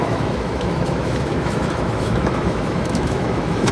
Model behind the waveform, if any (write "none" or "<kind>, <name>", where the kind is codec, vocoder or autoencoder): autoencoder, DAC-VAE